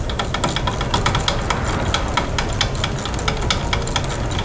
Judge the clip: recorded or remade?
recorded